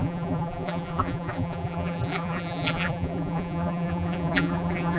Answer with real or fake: fake